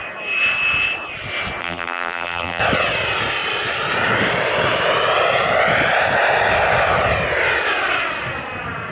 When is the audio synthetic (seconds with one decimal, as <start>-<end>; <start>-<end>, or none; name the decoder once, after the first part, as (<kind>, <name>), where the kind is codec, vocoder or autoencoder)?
1.6-2.6 (vocoder, BigVGAN v2)